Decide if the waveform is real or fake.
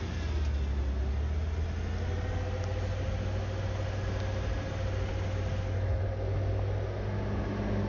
real